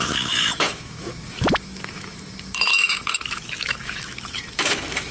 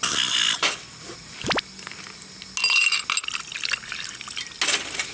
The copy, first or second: first